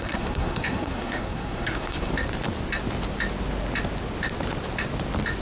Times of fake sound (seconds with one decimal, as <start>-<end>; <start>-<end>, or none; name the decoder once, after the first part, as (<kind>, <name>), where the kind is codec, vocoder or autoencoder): 0.0-2.1 (codec, SNAC)